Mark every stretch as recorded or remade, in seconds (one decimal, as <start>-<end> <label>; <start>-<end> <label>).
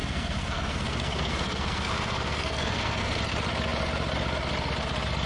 0.0-3.2 remade; 3.2-5.3 recorded